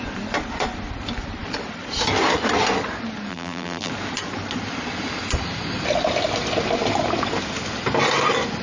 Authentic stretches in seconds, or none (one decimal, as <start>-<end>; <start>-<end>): 0.0-3.3; 3.9-8.6